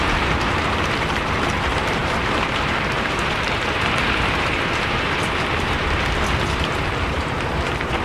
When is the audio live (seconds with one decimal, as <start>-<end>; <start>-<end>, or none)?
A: none

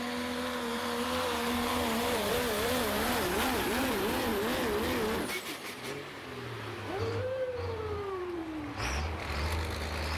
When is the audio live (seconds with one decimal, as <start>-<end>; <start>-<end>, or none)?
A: 4.3-7.0; 8.4-10.2

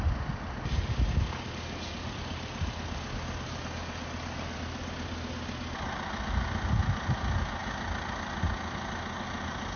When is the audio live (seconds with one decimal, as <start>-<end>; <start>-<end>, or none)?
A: 0.0-9.8

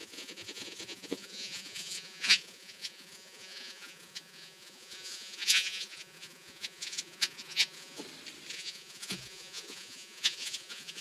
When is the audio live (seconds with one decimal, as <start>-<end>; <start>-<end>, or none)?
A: 8.0-8.5

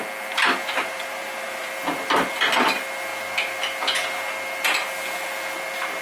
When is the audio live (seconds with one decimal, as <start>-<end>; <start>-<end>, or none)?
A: 0.0-0.6; 1.7-6.0